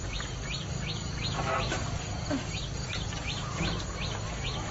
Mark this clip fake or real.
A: real